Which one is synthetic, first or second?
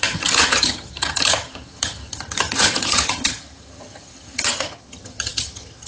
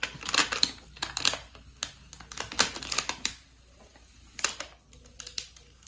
first